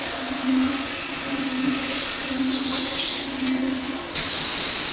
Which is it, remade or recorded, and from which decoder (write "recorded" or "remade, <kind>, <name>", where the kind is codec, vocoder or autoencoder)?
remade, vocoder, Vocos